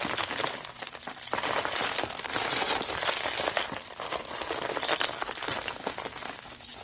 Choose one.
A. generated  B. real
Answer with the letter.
B